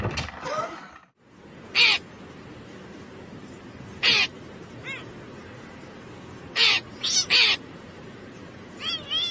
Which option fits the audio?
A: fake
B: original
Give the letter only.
B